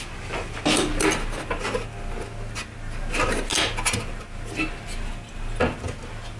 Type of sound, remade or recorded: recorded